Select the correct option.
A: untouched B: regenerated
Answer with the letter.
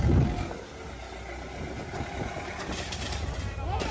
A